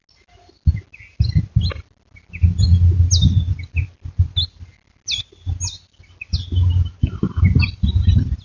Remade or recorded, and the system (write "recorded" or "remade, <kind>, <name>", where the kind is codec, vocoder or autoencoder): recorded